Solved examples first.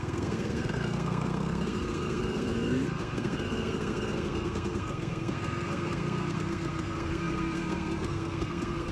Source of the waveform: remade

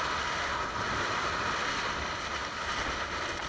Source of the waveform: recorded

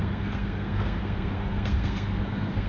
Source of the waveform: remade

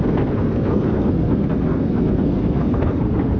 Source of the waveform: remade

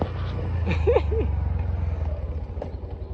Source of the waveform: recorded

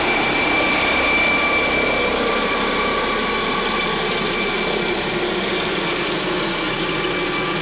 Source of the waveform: recorded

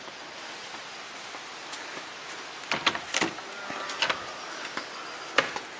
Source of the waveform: recorded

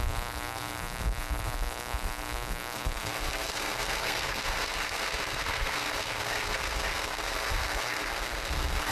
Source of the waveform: remade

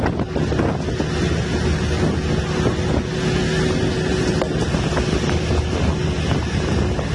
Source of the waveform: recorded